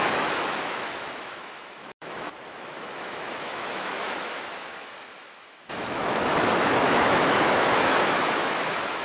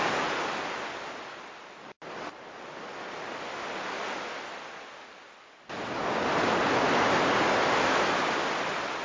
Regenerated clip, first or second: first